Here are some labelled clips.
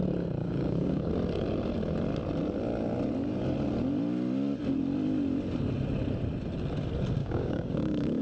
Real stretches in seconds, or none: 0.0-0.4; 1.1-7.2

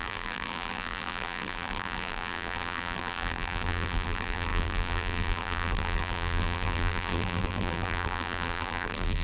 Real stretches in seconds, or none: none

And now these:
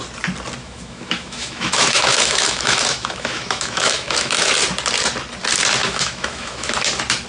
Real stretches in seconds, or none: 0.0-0.6; 4.5-5.8; 6.7-7.3